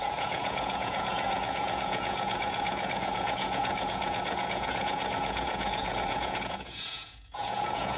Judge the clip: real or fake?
fake